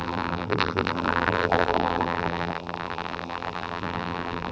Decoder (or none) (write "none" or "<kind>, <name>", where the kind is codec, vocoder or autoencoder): vocoder, BigVGAN v2